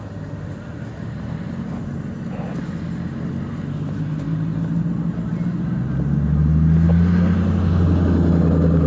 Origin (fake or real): real